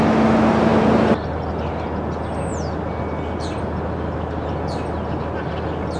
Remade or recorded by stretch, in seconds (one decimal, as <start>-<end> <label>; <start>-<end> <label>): 0.0-6.0 recorded